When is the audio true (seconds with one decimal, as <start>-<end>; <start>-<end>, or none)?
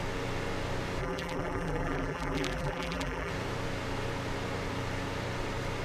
0.0-1.0; 3.3-5.8